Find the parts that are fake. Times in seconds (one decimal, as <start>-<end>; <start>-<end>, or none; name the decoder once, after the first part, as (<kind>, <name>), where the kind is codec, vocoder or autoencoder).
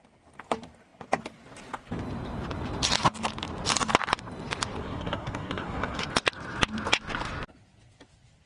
4.8-6.1 (codec, SNAC)